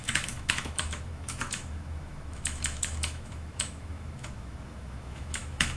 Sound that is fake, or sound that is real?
fake